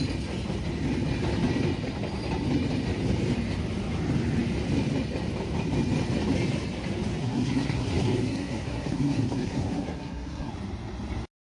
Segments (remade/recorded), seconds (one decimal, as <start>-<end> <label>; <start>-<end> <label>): 0.0-7.2 recorded; 7.2-10.5 remade; 10.5-11.6 recorded

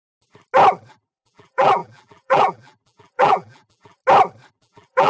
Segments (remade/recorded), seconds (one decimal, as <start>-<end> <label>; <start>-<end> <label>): 0.0-0.9 recorded; 0.9-4.0 remade; 4.0-4.5 recorded; 4.5-5.1 remade

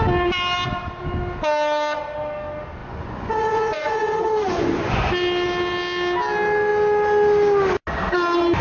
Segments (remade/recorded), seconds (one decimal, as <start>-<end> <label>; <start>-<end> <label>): 0.0-2.8 recorded; 2.8-5.1 remade; 5.1-8.6 recorded

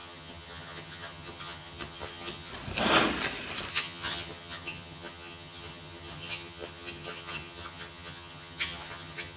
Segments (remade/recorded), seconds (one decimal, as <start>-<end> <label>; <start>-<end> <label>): 0.0-2.5 remade; 2.5-3.7 recorded; 3.7-9.4 remade

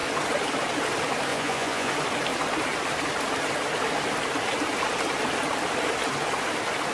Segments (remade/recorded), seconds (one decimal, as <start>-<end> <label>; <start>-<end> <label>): 0.0-1.3 recorded; 1.3-1.9 remade; 1.9-6.9 recorded

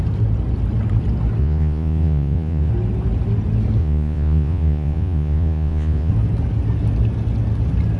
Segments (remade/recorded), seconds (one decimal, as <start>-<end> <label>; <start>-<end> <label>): 0.0-1.4 recorded; 1.4-2.7 remade; 2.7-3.8 recorded; 3.8-6.1 remade; 6.1-8.0 recorded